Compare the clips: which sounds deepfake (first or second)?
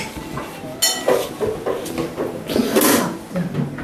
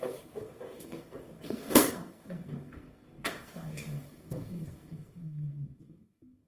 second